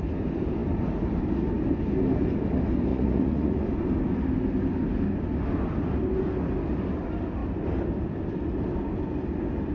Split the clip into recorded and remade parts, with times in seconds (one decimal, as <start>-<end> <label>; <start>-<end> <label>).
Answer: 0.0-2.9 recorded; 2.9-3.6 remade; 3.6-9.7 recorded